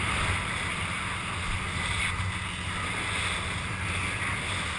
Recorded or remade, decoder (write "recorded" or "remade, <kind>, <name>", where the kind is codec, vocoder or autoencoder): recorded